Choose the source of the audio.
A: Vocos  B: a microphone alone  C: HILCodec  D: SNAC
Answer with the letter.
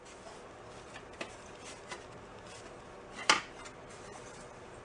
B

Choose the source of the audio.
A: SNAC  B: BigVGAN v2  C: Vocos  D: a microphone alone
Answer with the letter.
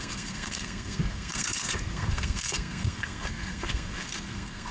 A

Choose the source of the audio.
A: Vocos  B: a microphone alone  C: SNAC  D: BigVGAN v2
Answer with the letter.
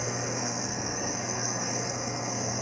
C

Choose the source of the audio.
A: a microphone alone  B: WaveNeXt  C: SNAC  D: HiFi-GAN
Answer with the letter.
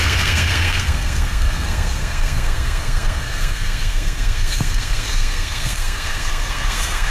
C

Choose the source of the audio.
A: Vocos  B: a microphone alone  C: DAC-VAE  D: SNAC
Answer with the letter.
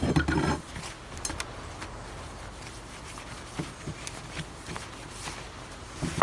B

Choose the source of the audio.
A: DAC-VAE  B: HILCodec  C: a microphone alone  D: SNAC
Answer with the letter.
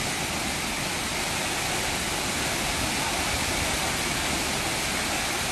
C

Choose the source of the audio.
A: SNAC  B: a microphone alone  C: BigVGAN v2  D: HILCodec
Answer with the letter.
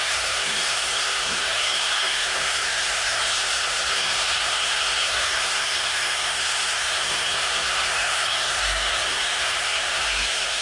A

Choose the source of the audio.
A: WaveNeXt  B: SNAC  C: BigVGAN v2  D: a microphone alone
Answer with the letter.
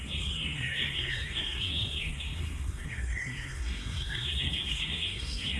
B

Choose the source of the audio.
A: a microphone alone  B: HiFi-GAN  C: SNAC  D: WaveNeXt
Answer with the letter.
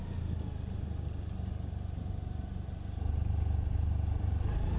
A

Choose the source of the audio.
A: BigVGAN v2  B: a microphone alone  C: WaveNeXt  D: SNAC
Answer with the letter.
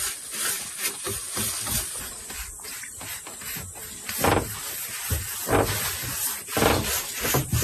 B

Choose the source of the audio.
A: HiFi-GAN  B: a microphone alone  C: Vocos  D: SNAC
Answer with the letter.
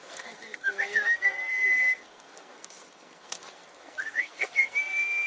D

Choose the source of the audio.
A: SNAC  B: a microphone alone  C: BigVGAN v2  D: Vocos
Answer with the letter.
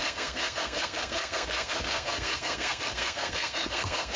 A